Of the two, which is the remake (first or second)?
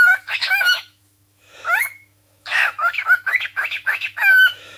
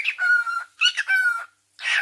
first